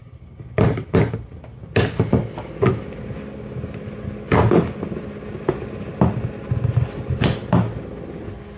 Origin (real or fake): real